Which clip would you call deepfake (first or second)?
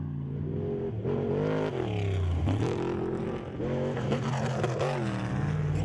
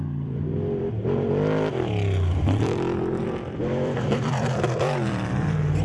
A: second